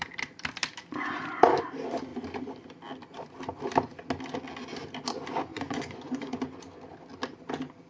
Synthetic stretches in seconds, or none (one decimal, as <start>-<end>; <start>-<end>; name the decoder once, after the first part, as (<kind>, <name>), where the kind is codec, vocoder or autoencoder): 5.5-6.4 (vocoder, Vocos)